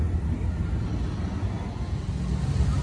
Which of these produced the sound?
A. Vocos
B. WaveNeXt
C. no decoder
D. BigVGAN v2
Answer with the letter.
C